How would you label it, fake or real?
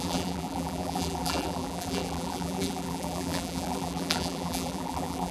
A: fake